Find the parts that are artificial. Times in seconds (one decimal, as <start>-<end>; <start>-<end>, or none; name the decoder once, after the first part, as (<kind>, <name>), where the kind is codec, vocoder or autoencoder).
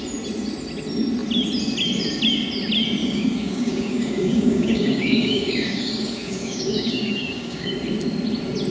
3.0-7.7 (codec, DAC)